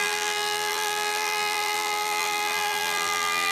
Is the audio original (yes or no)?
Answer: no